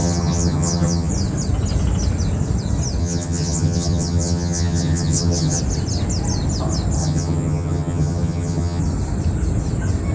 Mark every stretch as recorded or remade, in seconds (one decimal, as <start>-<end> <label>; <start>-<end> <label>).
0.0-1.1 remade; 1.1-3.0 recorded; 3.0-5.6 remade; 5.6-7.0 recorded; 7.0-8.8 remade; 8.8-10.1 recorded